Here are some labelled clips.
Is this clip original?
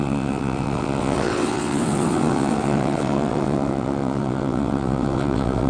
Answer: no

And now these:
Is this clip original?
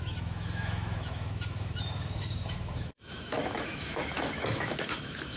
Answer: no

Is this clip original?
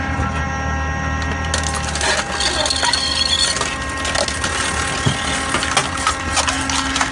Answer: yes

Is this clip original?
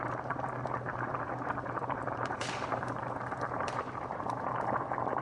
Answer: no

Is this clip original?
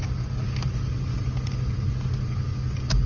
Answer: yes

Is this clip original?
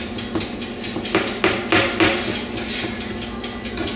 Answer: yes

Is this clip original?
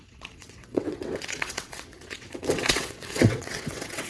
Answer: no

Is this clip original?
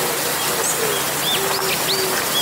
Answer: yes